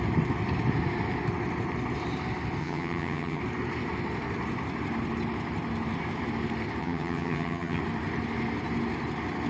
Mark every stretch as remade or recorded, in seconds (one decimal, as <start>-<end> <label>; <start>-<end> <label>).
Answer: 0.0-2.6 recorded; 2.6-3.4 remade; 3.4-6.8 recorded; 6.8-7.8 remade; 7.8-9.5 recorded